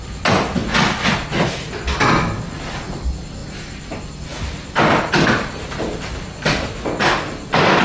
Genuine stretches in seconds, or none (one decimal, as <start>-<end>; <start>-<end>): 0.0-7.8